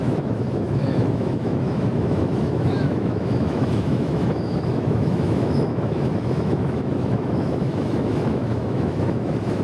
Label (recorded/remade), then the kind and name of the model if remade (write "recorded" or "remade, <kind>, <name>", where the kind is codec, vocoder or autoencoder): remade, autoencoder, DAC-VAE